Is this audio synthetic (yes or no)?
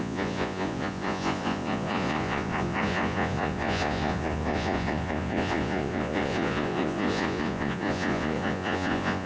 yes